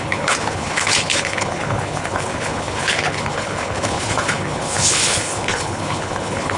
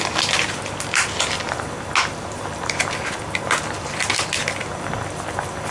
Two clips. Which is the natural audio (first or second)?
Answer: second